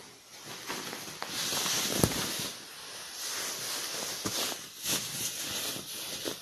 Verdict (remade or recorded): recorded